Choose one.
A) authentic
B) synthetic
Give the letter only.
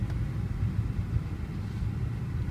A